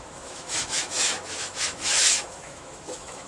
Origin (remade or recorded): remade